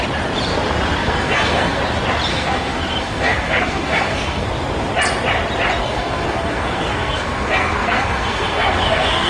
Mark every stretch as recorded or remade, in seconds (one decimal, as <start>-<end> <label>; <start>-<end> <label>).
0.0-1.0 recorded; 1.0-1.8 remade; 1.8-2.3 recorded; 2.3-4.5 remade; 4.5-5.8 recorded; 5.8-9.3 remade